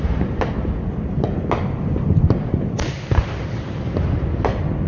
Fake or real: real